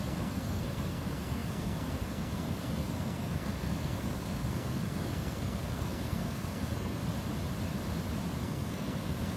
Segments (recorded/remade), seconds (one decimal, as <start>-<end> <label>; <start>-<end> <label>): 0.0-7.0 remade; 7.0-8.4 recorded; 8.4-9.4 remade

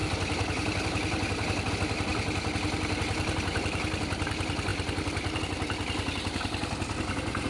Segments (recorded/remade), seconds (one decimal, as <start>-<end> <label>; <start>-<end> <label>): 0.0-7.5 recorded